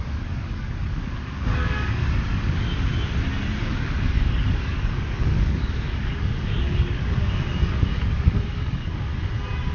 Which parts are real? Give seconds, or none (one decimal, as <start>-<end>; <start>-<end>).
2.9-3.6; 9.1-9.7